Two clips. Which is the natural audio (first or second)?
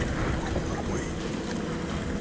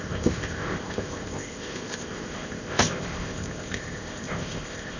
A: first